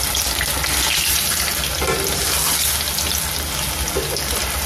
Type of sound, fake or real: real